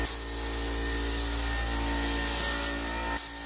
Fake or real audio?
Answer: real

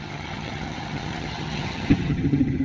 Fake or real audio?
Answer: fake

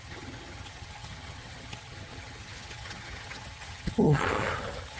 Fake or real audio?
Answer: fake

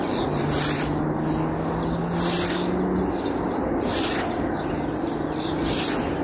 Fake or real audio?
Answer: real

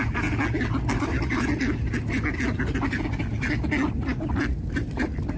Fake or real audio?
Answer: real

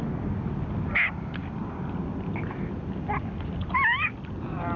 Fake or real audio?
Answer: real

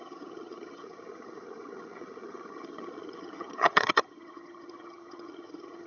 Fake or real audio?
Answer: fake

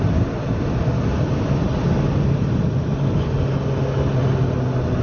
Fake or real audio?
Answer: real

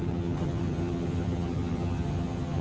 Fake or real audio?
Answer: fake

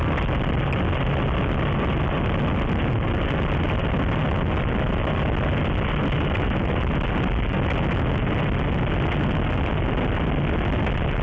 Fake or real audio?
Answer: real